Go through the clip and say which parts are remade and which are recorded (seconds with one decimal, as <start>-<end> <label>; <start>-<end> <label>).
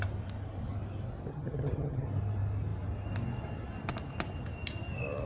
0.0-1.3 recorded; 1.3-2.1 remade; 2.1-5.3 recorded